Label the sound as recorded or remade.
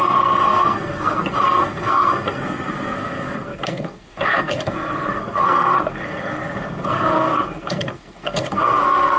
remade